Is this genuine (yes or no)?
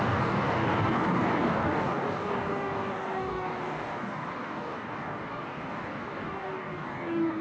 no